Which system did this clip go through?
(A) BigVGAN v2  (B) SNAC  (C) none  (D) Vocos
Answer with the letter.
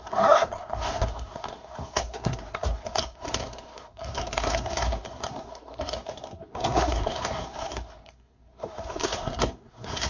B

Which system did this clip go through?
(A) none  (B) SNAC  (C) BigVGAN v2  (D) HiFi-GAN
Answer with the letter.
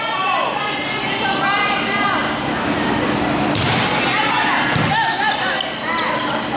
A